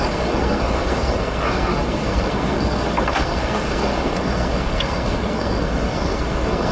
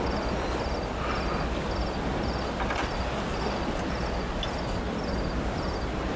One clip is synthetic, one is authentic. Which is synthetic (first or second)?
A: first